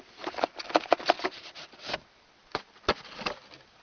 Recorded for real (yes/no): yes